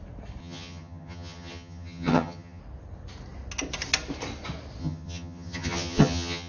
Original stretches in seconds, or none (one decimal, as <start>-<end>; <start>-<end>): 0.0-0.4; 2.6-4.8